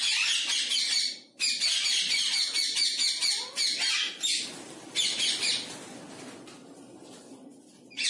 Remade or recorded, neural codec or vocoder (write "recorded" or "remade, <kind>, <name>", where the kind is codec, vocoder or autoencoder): recorded